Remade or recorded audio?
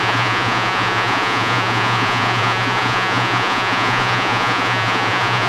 remade